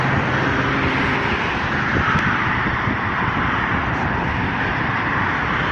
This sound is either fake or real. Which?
fake